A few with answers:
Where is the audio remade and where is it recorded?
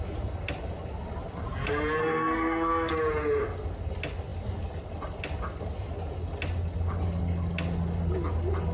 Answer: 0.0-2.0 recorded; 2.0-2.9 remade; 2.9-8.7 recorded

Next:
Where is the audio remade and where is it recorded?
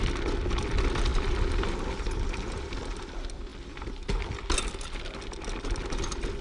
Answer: 0.0-6.4 recorded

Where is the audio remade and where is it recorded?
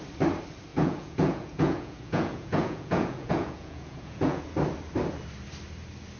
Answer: 0.0-0.7 recorded; 0.7-4.4 remade; 4.4-6.2 recorded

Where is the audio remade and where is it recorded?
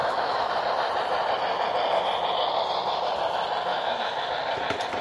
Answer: 0.0-0.5 remade; 0.5-3.7 recorded; 3.7-4.3 remade; 4.3-5.0 recorded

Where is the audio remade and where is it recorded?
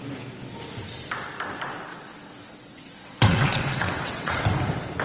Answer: 0.0-1.9 recorded; 1.9-4.4 remade; 4.4-5.0 recorded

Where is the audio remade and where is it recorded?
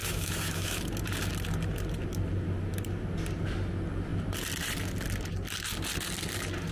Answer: 0.0-0.8 remade; 0.8-6.7 recorded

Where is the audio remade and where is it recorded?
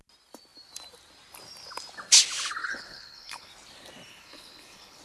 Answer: 0.0-2.6 recorded; 2.6-3.5 remade; 3.5-4.1 recorded; 4.1-5.0 remade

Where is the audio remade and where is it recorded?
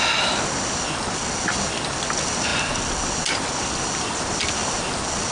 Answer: 0.0-5.3 recorded